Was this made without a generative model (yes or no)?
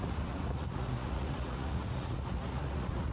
no